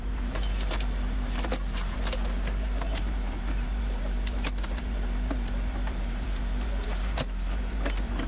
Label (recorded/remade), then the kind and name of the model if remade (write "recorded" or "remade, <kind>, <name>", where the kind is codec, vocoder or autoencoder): remade, vocoder, BigVGAN v2